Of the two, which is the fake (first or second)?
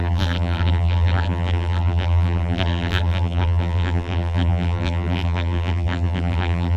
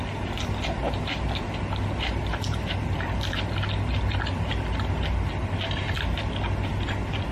first